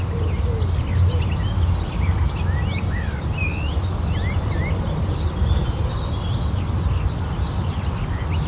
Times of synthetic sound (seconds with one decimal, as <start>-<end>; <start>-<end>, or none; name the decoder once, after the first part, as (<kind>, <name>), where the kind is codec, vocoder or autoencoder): none